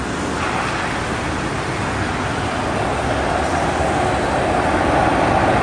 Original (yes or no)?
yes